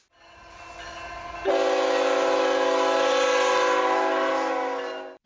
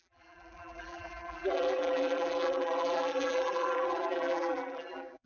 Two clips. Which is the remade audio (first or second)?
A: second